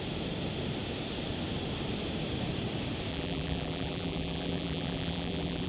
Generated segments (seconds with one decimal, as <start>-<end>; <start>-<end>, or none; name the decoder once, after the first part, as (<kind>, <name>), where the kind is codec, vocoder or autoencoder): 3.1-5.7 (vocoder, BigVGAN v2)

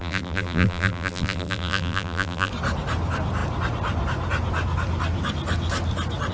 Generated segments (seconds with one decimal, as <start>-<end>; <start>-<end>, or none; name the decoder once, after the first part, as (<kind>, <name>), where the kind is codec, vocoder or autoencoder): 0.0-2.5 (vocoder, BigVGAN v2)

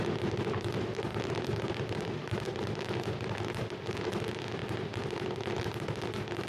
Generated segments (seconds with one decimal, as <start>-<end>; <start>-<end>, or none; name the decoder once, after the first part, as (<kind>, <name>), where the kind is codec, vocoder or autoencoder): 1.1-2.6 (vocoder, BigVGAN v2); 4.6-5.6

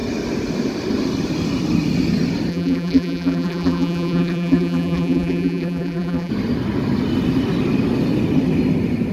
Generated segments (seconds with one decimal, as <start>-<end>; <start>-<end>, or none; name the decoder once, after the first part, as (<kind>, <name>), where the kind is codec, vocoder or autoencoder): 2.5-6.3 (vocoder, BigVGAN v2)

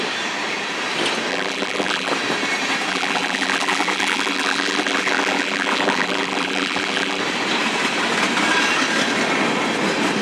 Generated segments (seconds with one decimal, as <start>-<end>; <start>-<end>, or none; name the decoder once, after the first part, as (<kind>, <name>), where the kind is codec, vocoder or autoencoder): 1.3-2.1 (vocoder, BigVGAN v2); 2.9-7.2

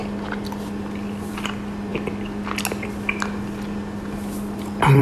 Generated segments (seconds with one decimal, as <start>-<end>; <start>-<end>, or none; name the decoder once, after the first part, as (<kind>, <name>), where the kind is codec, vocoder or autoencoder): none

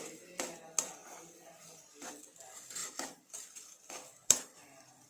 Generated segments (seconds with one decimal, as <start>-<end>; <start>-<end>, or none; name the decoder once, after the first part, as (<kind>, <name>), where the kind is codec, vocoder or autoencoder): 2.8-5.1 (vocoder, BigVGAN v2)

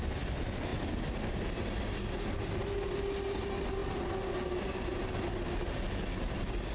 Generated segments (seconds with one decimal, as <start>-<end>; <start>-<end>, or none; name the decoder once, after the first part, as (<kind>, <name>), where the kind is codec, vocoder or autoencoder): none